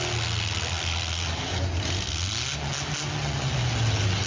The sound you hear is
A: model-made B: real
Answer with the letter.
B